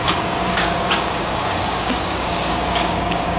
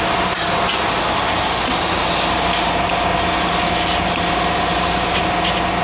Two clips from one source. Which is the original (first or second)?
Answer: second